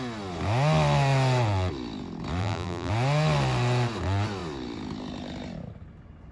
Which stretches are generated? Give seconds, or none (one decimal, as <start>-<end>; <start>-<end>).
2.4-2.9